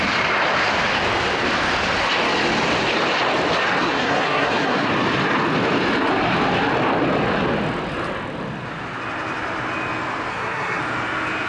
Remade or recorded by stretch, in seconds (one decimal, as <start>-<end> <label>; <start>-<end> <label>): 0.0-3.8 recorded; 3.8-4.9 remade; 4.9-10.3 recorded; 10.3-10.8 remade; 10.8-11.5 recorded